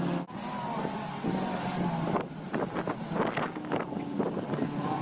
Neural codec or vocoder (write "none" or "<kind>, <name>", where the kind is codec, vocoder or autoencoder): none